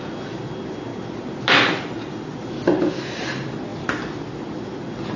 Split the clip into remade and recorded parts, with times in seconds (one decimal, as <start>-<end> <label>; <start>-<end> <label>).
0.0-5.2 recorded